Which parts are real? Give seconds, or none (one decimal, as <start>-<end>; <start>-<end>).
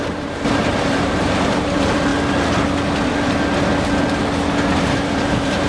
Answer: 2.1-4.8